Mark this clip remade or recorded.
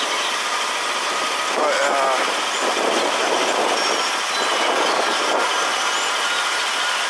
recorded